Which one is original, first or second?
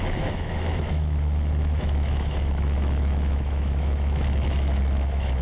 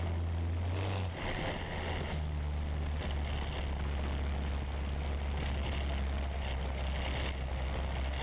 second